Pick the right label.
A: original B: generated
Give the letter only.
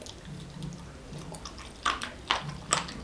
A